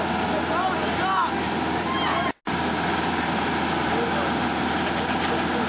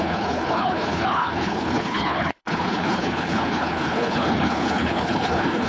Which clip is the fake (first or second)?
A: second